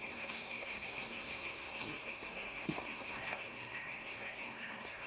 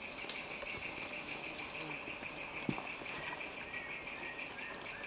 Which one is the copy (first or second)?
first